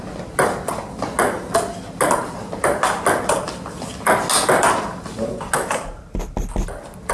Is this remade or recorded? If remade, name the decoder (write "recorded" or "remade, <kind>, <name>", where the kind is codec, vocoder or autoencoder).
recorded